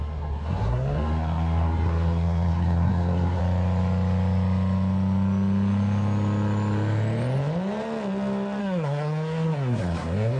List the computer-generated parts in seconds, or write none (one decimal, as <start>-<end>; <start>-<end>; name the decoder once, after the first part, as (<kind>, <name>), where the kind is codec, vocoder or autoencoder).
0.0-3.4 (codec, SNAC); 8.6-10.4